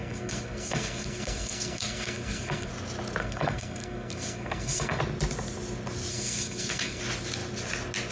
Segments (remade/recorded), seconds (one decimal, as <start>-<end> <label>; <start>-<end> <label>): 0.0-2.7 remade; 2.7-3.2 recorded; 3.2-5.0 remade; 5.0-6.1 recorded; 6.1-7.0 remade; 7.0-8.1 recorded